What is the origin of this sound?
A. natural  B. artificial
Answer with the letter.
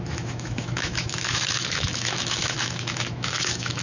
B